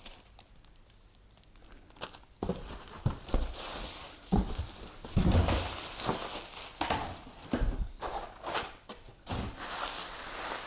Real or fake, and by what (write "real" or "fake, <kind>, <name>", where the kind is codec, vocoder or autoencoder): real